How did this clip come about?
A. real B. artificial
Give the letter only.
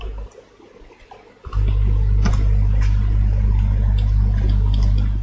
A